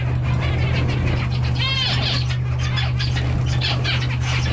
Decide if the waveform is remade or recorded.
recorded